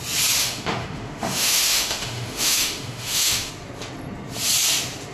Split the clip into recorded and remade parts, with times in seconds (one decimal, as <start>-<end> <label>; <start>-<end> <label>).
0.0-0.4 recorded; 0.4-3.5 remade; 3.5-5.1 recorded